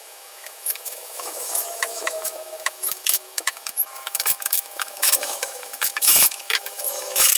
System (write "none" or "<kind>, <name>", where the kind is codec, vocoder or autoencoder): autoencoder, DAC-VAE